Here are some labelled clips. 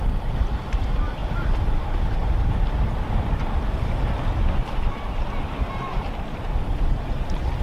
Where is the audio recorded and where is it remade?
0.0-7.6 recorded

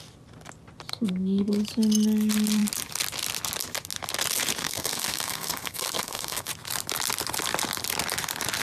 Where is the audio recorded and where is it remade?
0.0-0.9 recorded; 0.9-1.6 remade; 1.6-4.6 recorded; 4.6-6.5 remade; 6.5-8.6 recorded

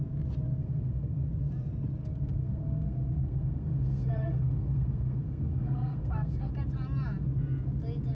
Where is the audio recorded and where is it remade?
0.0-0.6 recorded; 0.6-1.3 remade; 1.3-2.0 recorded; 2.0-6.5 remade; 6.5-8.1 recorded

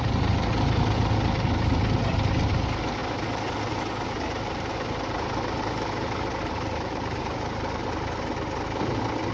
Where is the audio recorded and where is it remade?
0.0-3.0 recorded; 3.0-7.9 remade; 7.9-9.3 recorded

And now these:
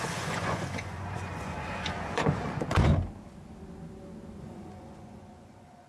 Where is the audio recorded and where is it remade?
0.0-2.9 remade; 2.9-4.4 recorded; 4.4-5.9 remade